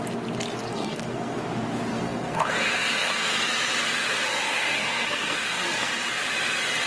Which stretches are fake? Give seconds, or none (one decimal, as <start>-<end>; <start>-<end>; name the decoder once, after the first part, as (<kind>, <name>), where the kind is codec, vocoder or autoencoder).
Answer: 0.7-1.4 (codec, SNAC); 1.9-3.5; 4.6-5.9